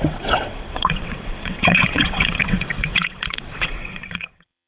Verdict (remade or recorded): remade